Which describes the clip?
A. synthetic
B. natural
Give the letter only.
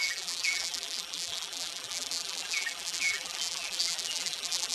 A